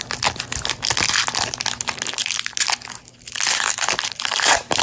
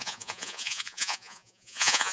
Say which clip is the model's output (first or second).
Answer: second